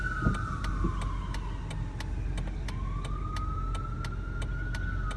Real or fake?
real